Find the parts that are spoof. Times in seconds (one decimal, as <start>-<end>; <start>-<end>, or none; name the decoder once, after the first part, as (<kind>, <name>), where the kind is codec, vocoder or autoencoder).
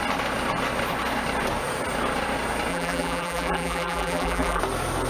2.7-4.6 (vocoder, BigVGAN v2)